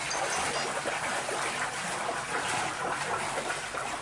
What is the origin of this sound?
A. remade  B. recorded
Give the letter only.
B